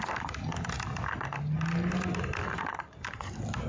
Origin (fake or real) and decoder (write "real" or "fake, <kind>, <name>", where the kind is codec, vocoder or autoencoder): real